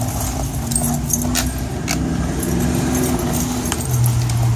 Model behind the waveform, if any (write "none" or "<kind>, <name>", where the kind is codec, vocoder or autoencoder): none